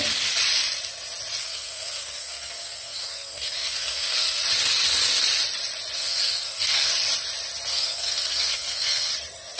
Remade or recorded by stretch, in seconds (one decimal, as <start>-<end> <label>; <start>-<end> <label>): 0.0-1.4 recorded; 1.4-4.4 remade; 4.4-6.0 recorded; 6.0-6.9 remade; 6.9-7.7 recorded; 7.7-9.1 remade; 9.1-9.6 recorded